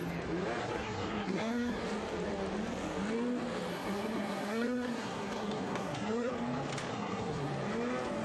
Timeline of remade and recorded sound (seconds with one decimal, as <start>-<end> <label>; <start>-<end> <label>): 0.0-0.6 recorded; 0.6-1.8 remade; 1.8-3.7 recorded; 3.7-6.3 remade; 6.3-6.9 recorded; 6.9-7.5 remade; 7.5-8.2 recorded